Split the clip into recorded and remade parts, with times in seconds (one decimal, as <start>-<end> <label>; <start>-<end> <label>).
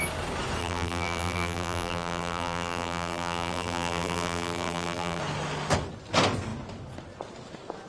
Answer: 0.0-0.6 recorded; 0.6-5.2 remade; 5.2-7.9 recorded